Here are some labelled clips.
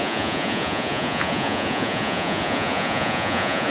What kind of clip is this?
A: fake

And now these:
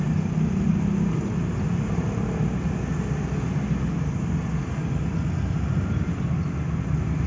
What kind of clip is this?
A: real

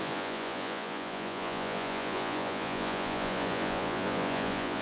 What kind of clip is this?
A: fake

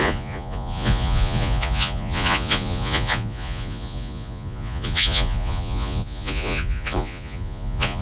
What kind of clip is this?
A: fake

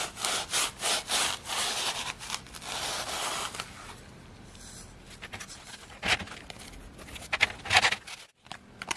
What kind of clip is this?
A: real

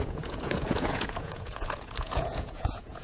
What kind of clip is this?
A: fake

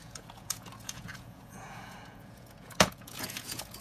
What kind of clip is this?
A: fake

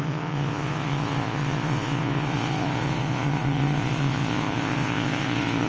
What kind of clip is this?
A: fake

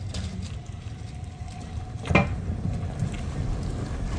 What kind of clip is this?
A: real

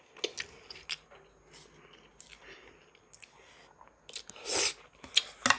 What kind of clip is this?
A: real